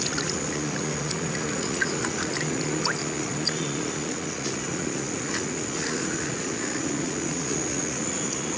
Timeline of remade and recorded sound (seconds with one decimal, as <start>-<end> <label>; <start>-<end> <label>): 0.0-8.6 remade